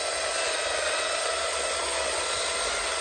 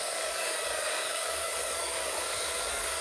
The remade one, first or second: second